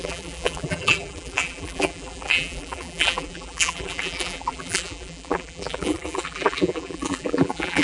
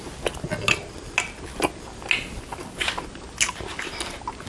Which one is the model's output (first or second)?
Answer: first